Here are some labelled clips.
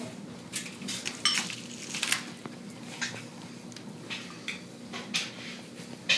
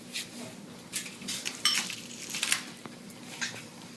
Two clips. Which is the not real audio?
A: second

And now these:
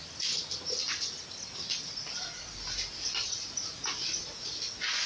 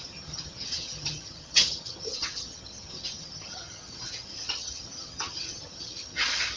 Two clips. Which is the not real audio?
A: second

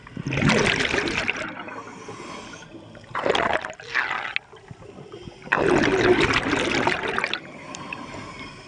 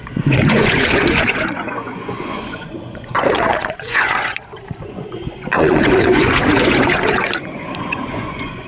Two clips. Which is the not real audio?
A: second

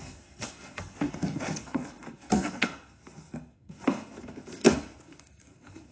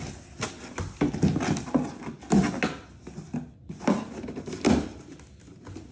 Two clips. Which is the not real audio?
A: first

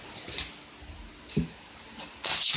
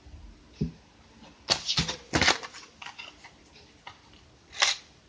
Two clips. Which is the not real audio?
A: second